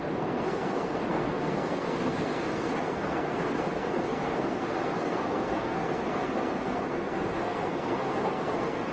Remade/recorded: remade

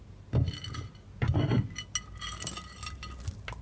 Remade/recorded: recorded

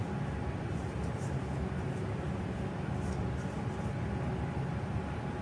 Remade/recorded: recorded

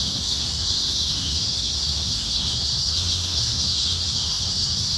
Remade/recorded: remade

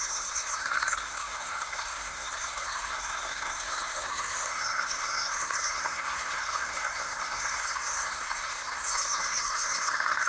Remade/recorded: remade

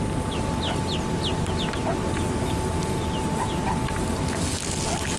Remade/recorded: recorded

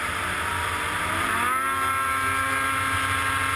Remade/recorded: recorded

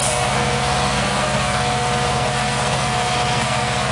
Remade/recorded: remade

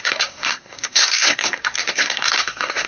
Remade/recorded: remade